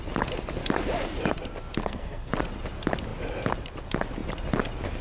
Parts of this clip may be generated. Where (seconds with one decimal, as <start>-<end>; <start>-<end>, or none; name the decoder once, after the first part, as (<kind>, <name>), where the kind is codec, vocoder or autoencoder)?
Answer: 1.8-2.3 (codec, SNAC)